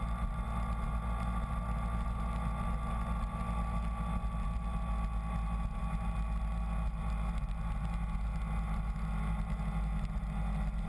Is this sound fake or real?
real